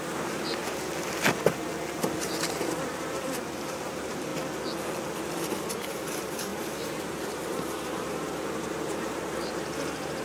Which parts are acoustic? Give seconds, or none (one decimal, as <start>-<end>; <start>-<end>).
0.6-2.8; 4.3-5.7